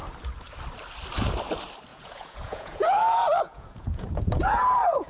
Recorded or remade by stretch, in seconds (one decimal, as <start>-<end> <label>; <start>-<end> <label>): 0.0-1.9 recorded; 1.9-5.1 remade